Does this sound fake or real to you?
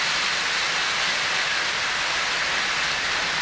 real